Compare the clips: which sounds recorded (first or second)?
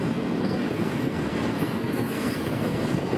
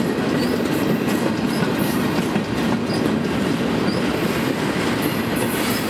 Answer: second